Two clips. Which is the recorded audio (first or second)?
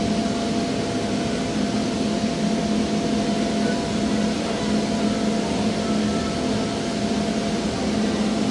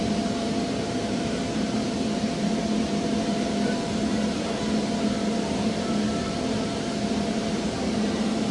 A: first